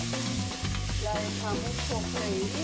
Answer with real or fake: real